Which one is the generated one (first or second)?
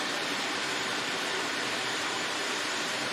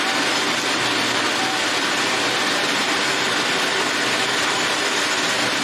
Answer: first